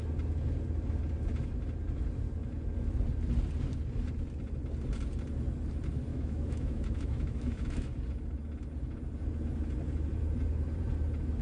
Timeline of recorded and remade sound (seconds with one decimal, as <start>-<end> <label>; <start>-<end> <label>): 0.0-6.1 recorded; 6.1-8.0 remade; 8.0-11.4 recorded

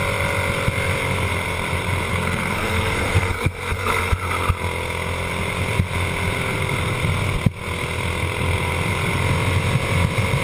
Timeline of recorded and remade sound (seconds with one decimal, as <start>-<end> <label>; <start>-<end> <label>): 0.0-2.1 recorded; 2.1-4.1 remade; 4.1-10.4 recorded

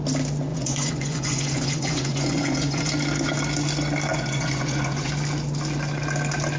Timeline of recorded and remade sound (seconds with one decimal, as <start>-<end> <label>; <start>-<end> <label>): 0.0-0.5 recorded; 0.5-2.9 remade; 2.9-4.1 recorded; 4.1-5.1 remade; 5.1-6.6 recorded